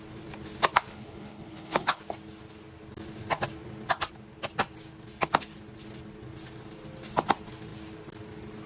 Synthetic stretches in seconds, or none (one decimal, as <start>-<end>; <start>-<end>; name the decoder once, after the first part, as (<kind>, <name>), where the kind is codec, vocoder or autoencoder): 0.9-2.0 (codec, HILCodec)